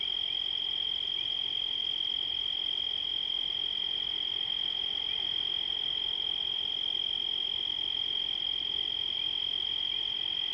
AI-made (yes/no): no